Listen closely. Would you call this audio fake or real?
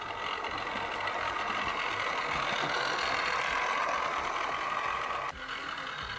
real